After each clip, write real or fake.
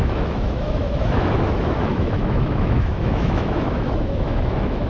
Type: fake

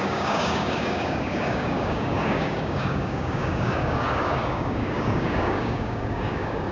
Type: fake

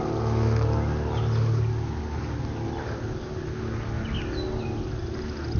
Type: real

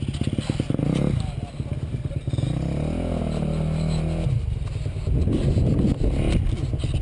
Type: real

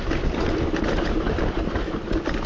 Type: real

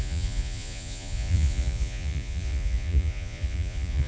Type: fake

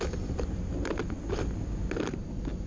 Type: real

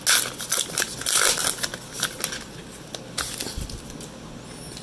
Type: real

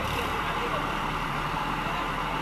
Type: fake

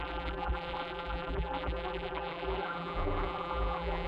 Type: fake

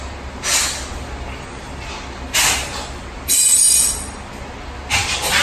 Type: real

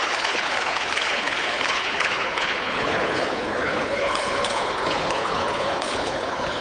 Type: fake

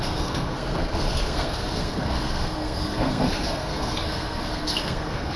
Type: fake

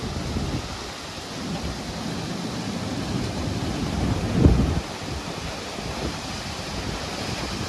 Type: real